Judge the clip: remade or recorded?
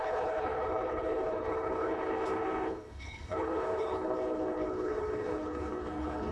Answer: remade